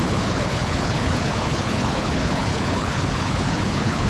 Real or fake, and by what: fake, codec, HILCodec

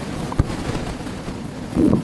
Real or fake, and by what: fake, vocoder, Vocos